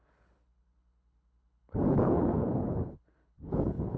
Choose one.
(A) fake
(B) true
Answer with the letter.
A